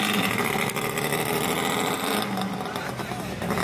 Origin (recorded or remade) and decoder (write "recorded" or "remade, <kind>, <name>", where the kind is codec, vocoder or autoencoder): recorded